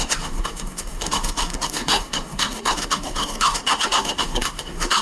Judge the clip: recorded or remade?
remade